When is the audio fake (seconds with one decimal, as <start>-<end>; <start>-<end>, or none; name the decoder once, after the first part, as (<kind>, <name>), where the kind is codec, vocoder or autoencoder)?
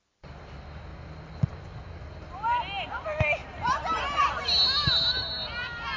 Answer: 3.4-5.0 (vocoder, BigVGAN v2)